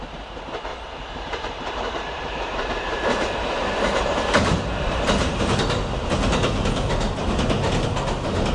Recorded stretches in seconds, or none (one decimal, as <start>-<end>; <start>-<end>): 0.0-0.7; 5.4-8.5